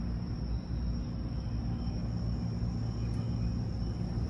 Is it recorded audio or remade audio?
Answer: recorded